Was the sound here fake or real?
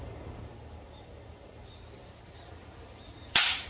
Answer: fake